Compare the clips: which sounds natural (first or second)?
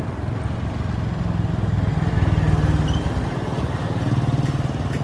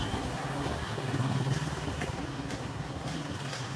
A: first